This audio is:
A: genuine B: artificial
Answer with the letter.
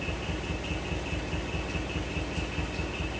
A